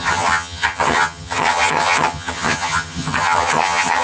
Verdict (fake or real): fake